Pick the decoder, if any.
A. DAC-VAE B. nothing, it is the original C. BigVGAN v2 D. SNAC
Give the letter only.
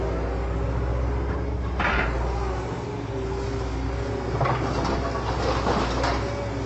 B